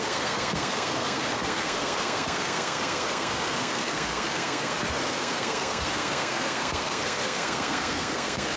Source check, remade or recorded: remade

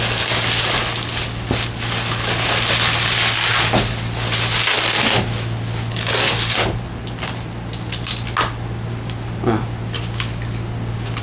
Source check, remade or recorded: recorded